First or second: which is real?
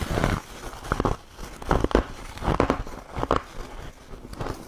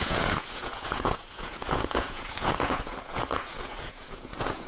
first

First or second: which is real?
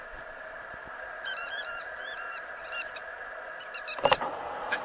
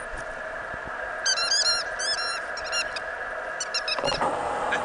second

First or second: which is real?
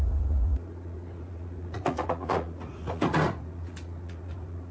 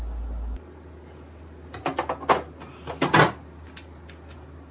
second